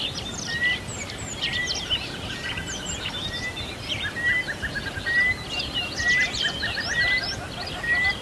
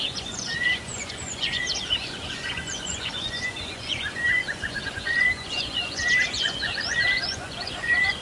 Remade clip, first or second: second